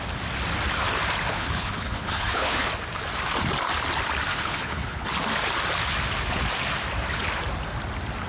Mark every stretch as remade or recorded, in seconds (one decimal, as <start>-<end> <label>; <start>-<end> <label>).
0.0-1.3 recorded; 1.3-2.7 remade; 2.7-4.3 recorded; 4.3-5.1 remade; 5.1-8.3 recorded